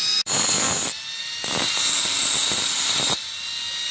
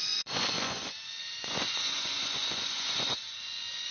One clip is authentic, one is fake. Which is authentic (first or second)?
first